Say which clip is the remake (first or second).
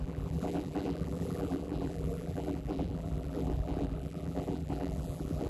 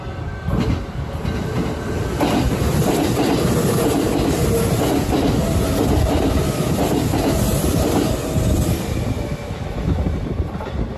first